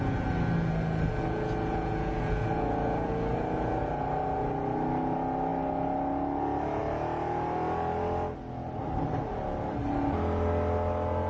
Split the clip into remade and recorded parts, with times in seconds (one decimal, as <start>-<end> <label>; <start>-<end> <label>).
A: 0.0-11.3 recorded